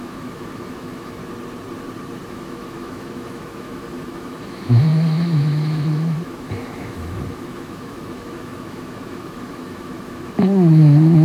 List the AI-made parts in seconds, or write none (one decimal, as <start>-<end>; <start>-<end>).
0.0-1.2; 2.3-11.2

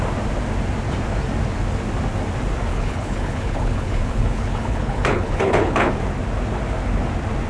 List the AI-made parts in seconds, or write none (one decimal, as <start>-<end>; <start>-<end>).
2.7-5.9